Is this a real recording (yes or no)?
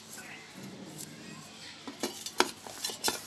yes